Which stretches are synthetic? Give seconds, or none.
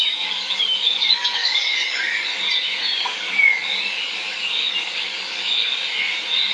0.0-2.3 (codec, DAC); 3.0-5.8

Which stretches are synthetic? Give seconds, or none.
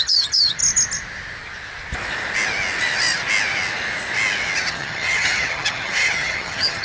0.0-0.6 (vocoder, HiFi-GAN); 4.7-6.8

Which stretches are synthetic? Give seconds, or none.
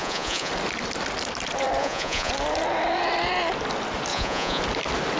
0.0-0.5 (vocoder, Vocos); 1.8-2.3; 4.1-4.6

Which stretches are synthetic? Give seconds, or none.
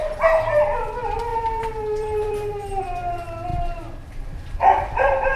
0.9-3.5 (vocoder, BigVGAN v2); 4.2-5.4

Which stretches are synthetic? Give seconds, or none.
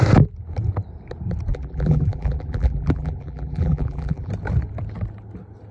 1.5-4.3 (vocoder, BigVGAN v2)